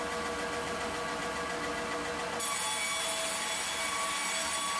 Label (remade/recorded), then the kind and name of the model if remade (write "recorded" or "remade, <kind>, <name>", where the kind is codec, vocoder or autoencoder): recorded